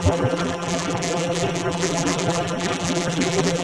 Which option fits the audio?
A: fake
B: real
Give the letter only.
A